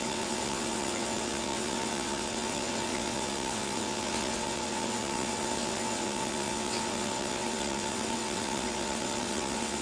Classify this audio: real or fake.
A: fake